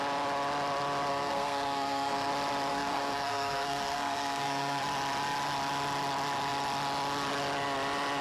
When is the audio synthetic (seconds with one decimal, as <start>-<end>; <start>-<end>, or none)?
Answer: 1.1-2.3; 2.7-4.8